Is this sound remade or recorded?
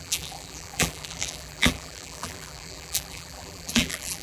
remade